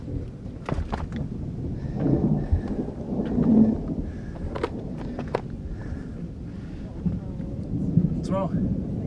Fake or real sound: real